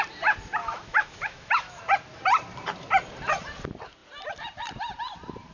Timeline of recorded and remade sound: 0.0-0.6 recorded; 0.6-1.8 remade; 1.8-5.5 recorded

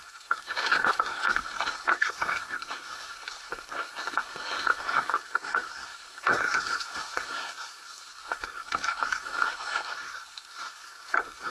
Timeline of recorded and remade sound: 0.0-11.5 remade

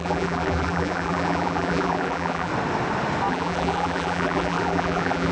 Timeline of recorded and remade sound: 0.0-2.5 remade; 2.5-3.3 recorded; 3.3-5.3 remade

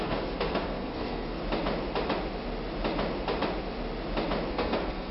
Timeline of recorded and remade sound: 0.0-1.4 remade; 1.4-4.5 recorded; 4.5-5.1 remade

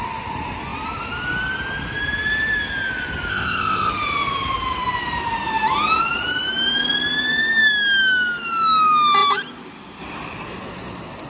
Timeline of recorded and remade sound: 0.0-3.3 recorded; 3.3-3.9 remade; 3.9-11.3 recorded